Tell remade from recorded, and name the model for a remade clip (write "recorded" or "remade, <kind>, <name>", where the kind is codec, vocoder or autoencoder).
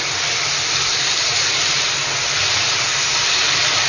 recorded